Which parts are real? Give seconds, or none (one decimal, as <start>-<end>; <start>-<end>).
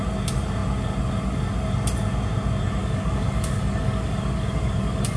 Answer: 0.0-2.8